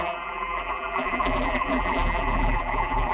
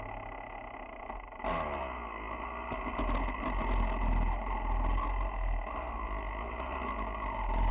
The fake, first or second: first